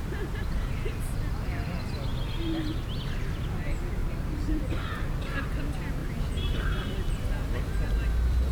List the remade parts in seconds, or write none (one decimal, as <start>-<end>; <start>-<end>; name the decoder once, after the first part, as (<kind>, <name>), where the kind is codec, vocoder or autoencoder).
4.0-5.0 (vocoder, BigVGAN v2)